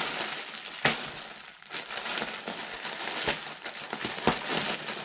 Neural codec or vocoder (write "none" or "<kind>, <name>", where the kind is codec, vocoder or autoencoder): none